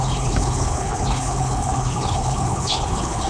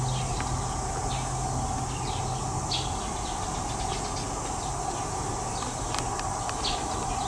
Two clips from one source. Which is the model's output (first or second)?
first